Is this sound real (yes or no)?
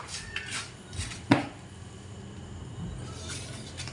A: no